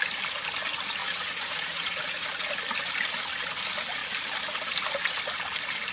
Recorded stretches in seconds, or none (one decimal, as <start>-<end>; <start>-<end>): 0.0-1.0; 2.6-5.9